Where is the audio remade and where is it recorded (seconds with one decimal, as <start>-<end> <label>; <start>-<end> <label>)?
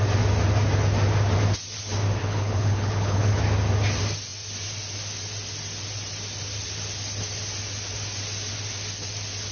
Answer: 0.0-2.2 recorded; 2.2-3.4 remade; 3.4-9.5 recorded